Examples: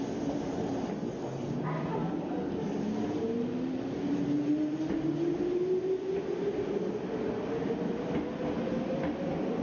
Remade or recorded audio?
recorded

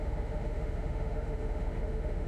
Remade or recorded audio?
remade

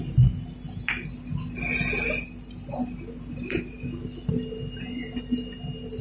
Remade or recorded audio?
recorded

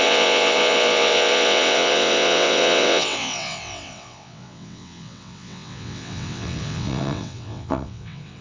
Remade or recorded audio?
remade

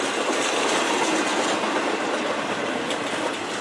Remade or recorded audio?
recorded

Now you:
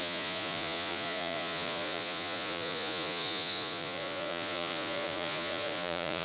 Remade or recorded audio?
remade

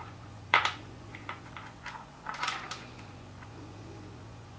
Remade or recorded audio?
remade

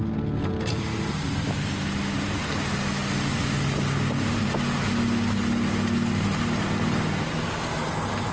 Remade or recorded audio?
recorded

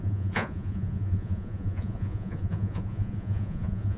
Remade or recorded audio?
remade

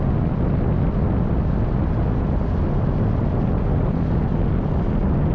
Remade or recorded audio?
recorded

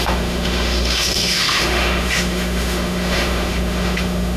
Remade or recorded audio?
remade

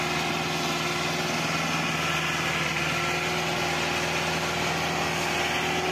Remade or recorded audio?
recorded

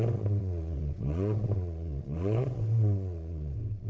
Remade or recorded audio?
remade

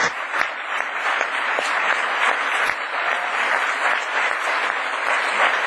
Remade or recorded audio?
recorded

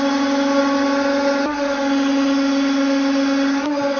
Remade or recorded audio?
recorded